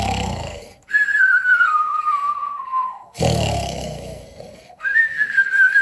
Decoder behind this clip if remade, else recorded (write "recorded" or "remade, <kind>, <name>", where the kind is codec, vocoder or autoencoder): remade, codec, SNAC